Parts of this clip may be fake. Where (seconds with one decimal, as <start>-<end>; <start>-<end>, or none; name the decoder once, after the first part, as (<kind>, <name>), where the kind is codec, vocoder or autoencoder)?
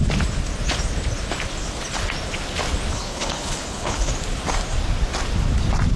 2.9-4.1 (codec, HILCodec)